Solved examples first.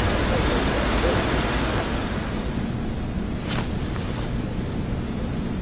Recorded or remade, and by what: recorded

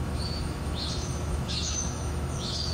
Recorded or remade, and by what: remade, autoencoder, DAC-VAE